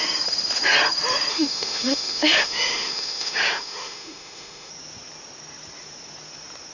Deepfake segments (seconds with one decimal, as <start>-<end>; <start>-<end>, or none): 1.3-4.7